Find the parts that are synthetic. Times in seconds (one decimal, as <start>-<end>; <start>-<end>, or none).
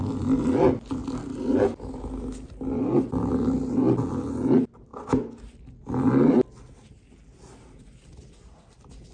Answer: none